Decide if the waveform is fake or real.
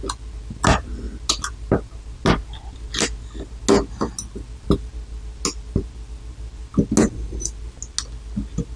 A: real